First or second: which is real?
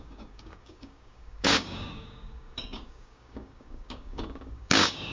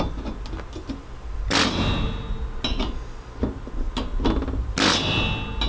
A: second